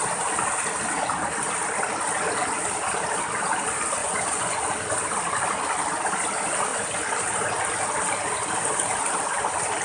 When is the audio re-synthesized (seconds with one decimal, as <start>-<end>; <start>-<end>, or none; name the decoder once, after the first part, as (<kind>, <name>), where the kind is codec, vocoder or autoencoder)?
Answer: 4.0-4.6 (vocoder, Vocos)